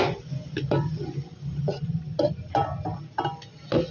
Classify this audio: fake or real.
real